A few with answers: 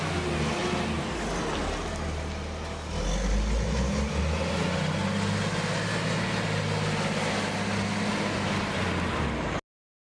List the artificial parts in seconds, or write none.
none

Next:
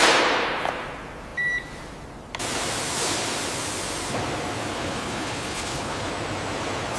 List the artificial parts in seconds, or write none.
4.7-6.1 (codec, HILCodec)

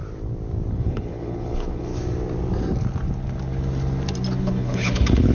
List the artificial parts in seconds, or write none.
0.7-1.9 (codec, HILCodec); 4.4-5.3

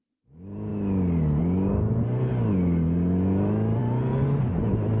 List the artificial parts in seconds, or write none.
none

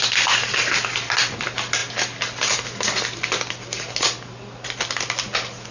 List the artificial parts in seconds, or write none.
none

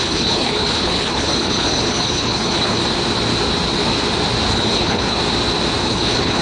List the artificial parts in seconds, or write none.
0.0-2.8 (codec, HILCodec); 4.5-5.2; 5.8-6.4

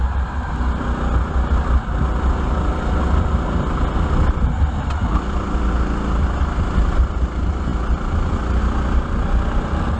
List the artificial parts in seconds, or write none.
none